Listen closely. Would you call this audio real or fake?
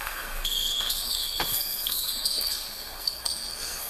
fake